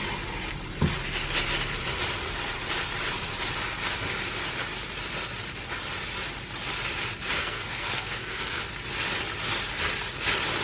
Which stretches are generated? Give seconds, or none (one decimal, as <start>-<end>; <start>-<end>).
7.4-8.6